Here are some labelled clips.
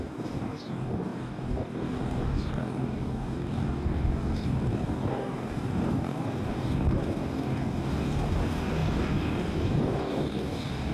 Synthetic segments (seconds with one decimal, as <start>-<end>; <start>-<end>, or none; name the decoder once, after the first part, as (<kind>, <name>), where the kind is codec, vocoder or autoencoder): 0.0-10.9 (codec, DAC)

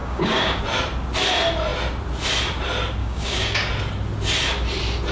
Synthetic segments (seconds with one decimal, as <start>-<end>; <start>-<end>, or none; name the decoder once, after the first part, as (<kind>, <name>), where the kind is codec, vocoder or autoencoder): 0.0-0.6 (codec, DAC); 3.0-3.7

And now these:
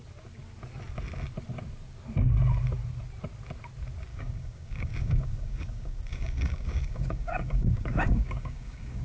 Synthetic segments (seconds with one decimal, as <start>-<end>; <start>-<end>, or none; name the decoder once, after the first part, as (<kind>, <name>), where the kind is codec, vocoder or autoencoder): 4.1-9.0 (codec, DAC)

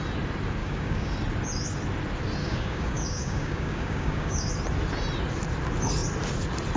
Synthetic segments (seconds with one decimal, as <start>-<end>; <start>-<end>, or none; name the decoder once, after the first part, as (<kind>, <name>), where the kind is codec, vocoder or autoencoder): 0.6-1.1 (codec, DAC); 2.4-4.5